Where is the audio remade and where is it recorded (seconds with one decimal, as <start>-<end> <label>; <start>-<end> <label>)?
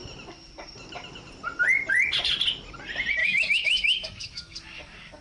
0.0-3.2 recorded; 3.2-5.2 remade